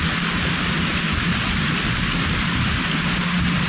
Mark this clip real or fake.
real